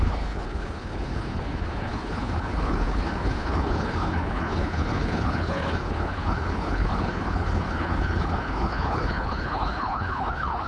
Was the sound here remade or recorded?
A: remade